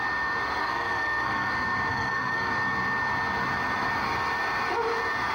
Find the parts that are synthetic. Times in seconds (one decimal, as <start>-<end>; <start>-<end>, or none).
0.6-1.5; 1.9-2.5